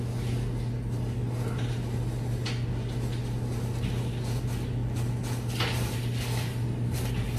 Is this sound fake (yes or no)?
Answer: no